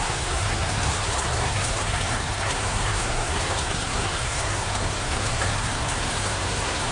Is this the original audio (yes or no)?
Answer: no